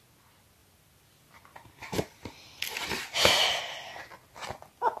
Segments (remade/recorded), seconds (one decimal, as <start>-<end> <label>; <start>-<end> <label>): 0.0-0.6 recorded; 0.6-3.6 remade; 3.6-5.0 recorded